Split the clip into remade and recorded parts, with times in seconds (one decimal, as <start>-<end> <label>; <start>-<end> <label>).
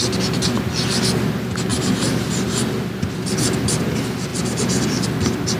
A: 0.0-1.7 recorded; 1.7-3.7 remade; 3.7-4.3 recorded; 4.3-4.8 remade; 4.8-5.6 recorded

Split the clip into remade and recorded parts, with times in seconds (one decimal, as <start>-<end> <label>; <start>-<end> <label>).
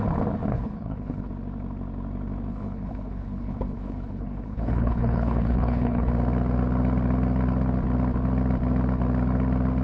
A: 0.0-0.5 recorded; 0.5-1.3 remade; 1.3-2.5 recorded; 2.5-6.1 remade; 6.1-9.8 recorded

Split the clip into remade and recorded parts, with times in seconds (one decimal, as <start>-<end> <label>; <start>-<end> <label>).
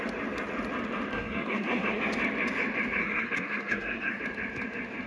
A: 0.0-1.1 recorded; 1.1-2.0 remade; 2.0-3.0 recorded; 3.0-4.2 remade; 4.2-5.1 recorded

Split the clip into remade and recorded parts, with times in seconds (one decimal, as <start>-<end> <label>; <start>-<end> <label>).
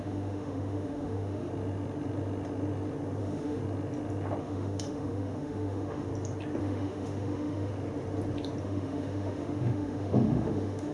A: 0.0-1.5 remade; 1.5-3.2 recorded; 3.2-3.6 remade; 3.6-4.4 recorded; 4.4-6.1 remade; 6.1-6.6 recorded; 6.6-7.7 remade; 7.7-8.6 recorded; 8.6-10.9 remade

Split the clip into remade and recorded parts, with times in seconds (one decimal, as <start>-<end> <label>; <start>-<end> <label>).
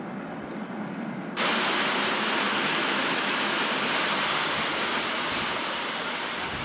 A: 0.0-2.8 recorded; 2.8-3.6 remade; 3.6-6.6 recorded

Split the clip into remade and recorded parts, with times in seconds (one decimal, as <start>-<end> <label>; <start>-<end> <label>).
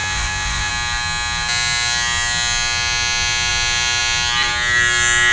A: 0.0-0.7 remade; 0.7-5.3 recorded